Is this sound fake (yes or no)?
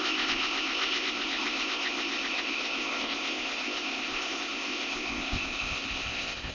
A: yes